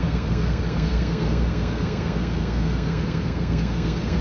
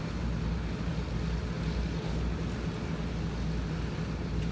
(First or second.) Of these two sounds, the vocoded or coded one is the first